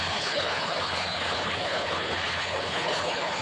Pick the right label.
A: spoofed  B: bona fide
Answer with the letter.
A